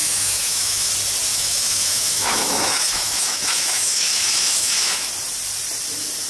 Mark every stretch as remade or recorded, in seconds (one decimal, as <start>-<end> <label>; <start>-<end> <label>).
0.0-0.9 remade; 0.9-1.3 recorded; 1.3-5.1 remade; 5.1-6.3 recorded